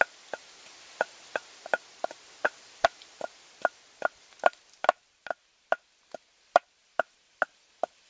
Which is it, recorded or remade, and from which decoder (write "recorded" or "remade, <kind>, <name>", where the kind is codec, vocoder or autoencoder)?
recorded